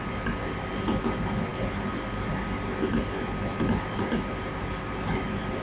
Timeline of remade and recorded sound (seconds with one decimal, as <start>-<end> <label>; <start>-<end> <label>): 0.0-5.6 recorded